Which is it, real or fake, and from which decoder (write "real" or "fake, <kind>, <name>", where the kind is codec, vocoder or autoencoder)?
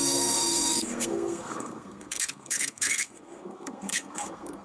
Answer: fake, codec, SNAC